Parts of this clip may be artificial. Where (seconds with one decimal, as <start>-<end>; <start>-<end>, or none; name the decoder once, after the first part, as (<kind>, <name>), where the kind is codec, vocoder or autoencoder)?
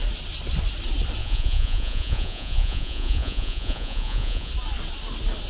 1.2-4.5 (vocoder, Vocos)